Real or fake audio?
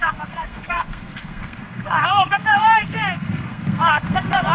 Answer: fake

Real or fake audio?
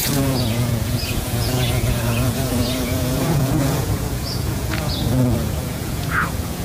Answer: fake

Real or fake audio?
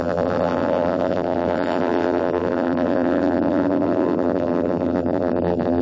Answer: fake